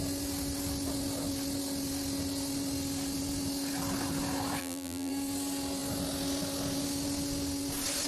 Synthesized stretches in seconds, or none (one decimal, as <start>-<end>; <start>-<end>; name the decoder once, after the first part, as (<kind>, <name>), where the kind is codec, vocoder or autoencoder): 4.6-5.1 (vocoder, BigVGAN v2)